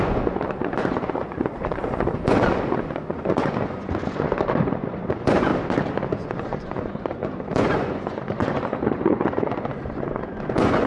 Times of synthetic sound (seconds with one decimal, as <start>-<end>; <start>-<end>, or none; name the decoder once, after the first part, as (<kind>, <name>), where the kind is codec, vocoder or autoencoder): 0.0-5.5 (vocoder, Vocos); 6.1-10.9